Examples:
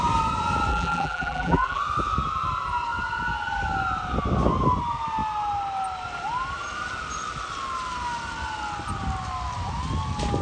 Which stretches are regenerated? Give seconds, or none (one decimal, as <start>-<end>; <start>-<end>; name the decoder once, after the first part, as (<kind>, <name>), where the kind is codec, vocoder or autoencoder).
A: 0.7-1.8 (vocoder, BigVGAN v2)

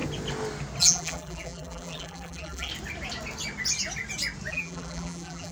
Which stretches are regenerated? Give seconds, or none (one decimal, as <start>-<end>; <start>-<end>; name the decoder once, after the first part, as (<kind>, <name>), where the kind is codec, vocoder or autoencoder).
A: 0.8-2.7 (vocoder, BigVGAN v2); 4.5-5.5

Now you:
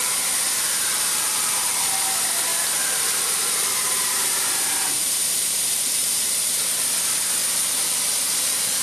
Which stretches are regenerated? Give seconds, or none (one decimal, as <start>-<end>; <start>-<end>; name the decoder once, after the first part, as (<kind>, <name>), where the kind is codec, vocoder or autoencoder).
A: 0.0-7.4 (vocoder, BigVGAN v2)

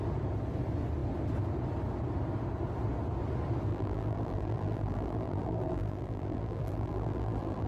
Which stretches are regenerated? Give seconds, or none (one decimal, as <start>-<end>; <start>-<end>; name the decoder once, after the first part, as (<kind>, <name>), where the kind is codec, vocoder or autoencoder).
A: 3.7-7.7 (vocoder, BigVGAN v2)

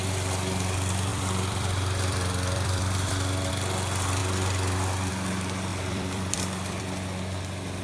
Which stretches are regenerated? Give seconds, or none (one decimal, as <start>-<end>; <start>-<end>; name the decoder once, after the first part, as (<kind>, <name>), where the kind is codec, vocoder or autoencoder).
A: 1.1-3.5 (vocoder, BigVGAN v2); 5.7-6.8

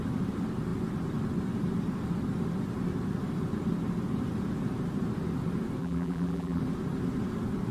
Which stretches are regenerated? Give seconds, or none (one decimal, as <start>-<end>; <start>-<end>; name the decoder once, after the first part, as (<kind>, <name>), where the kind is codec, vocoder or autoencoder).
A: 5.8-6.6 (vocoder, BigVGAN v2)